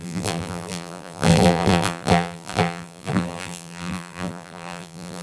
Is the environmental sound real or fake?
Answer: fake